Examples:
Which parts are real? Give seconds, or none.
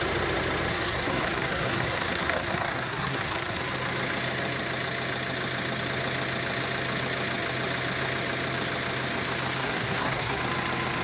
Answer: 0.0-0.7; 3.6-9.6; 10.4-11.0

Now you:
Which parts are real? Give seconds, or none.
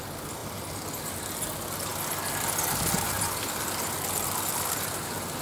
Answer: 0.0-5.4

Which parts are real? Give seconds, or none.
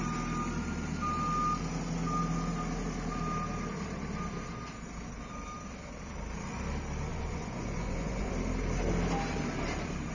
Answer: 0.0-7.1; 8.3-10.1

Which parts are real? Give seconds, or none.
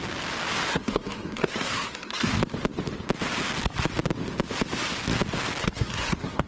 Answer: 0.0-0.7; 2.3-5.6